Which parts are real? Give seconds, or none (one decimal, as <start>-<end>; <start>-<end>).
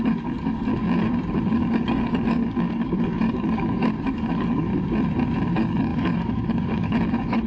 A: 0.7-1.5; 4.7-5.5